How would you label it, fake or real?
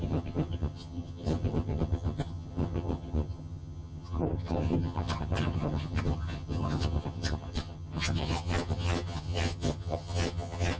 fake